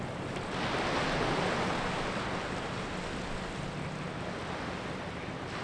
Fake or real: real